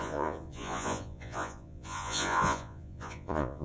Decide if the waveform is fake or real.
fake